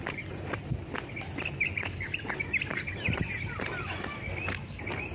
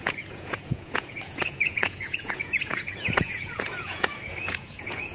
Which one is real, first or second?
first